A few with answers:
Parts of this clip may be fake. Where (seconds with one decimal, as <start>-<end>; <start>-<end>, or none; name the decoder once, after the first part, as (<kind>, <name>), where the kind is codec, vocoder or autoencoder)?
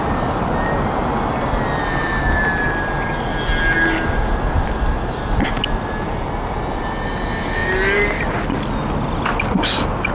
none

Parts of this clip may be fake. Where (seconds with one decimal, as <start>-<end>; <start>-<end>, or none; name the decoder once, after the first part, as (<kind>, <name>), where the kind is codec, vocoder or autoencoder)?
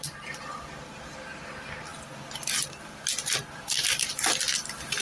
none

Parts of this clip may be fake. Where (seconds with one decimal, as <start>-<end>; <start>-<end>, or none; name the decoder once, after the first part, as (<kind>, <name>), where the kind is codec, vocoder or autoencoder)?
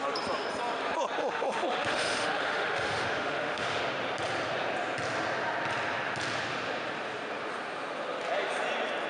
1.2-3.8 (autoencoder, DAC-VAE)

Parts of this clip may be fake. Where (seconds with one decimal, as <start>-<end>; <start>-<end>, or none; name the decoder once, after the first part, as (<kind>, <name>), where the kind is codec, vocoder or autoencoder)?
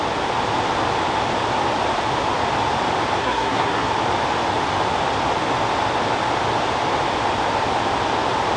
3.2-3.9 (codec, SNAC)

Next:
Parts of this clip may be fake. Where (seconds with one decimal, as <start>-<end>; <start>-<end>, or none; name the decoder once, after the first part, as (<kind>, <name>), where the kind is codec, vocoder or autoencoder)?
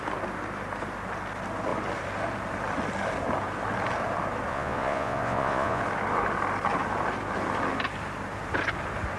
4.5-5.8 (vocoder, Vocos)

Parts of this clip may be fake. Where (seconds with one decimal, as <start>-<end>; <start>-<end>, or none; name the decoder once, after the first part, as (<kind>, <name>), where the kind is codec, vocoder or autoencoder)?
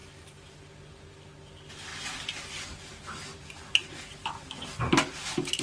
0.0-0.7 (vocoder, BigVGAN v2)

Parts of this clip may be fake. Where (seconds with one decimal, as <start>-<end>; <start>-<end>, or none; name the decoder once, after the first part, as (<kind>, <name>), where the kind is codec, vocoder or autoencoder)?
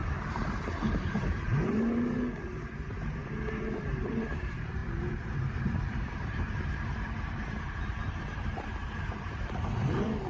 0.0-3.2 (vocoder, BigVGAN v2); 3.7-10.3